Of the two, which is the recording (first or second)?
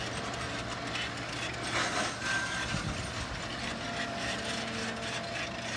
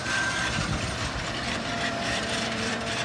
first